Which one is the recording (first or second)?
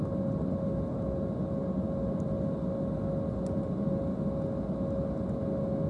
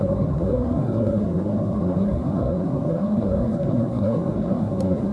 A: first